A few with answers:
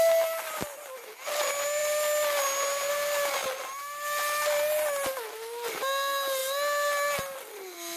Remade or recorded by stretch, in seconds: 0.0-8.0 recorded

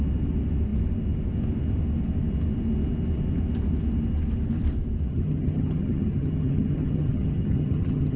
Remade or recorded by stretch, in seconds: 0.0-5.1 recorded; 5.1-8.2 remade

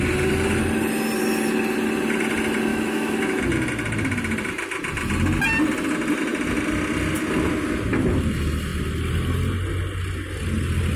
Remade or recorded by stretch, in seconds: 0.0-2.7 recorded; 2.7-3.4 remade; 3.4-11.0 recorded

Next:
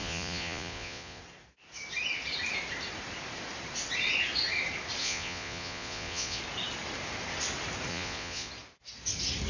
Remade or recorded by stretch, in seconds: 0.0-1.2 remade; 1.2-5.0 recorded; 5.0-6.4 remade; 6.4-7.9 recorded; 7.9-8.5 remade; 8.5-9.5 recorded